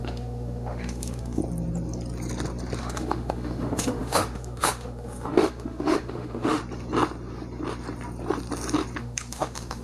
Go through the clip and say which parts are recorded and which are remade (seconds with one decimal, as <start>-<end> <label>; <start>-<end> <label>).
0.0-1.4 remade; 1.4-2.8 recorded; 2.8-6.6 remade; 6.6-9.0 recorded; 9.0-9.8 remade